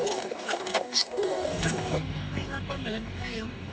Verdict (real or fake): fake